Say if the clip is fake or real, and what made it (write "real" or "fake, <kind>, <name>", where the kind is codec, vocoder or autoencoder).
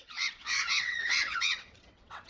fake, vocoder, WaveNeXt